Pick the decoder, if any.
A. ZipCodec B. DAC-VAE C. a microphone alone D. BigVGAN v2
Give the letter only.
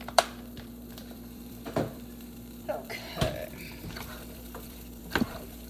D